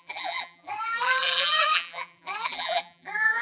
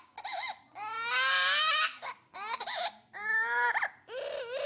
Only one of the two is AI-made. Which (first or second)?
first